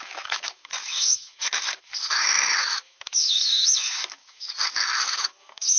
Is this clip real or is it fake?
fake